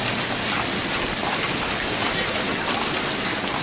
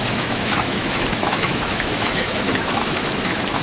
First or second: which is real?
first